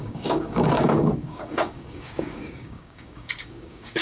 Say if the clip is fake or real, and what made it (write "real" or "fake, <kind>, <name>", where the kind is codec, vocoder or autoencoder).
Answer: fake, codec, DAC